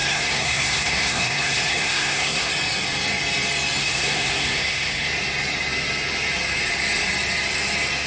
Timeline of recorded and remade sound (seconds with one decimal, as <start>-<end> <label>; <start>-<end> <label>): 0.0-2.5 remade; 2.5-3.8 recorded; 3.8-5.1 remade; 5.1-8.1 recorded